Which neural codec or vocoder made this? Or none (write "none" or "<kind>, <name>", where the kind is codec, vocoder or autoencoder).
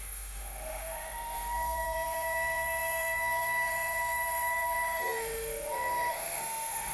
autoencoder, DAC-VAE